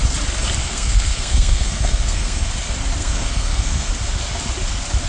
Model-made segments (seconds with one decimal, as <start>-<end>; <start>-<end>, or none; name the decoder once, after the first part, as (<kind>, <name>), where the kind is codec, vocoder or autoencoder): 0.6-2.5 (codec, SNAC); 3.0-3.9